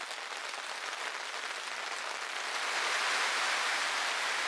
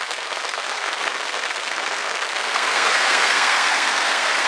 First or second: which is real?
first